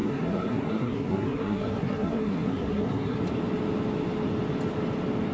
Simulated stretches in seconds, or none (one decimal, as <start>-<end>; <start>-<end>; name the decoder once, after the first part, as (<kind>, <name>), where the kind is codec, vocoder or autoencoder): 0.0-3.2 (codec, SNAC)